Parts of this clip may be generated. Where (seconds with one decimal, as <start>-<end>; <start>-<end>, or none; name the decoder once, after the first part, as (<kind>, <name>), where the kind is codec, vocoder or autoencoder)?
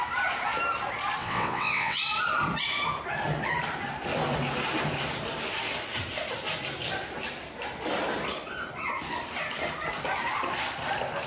1.2-2.0 (vocoder, WaveNeXt)